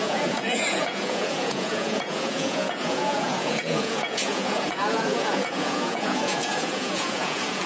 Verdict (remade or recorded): remade